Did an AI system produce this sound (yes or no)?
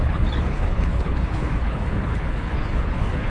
yes